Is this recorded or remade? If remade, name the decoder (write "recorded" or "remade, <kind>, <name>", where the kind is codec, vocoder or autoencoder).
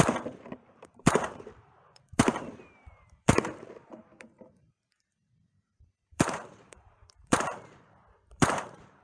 remade, vocoder, BigVGAN v2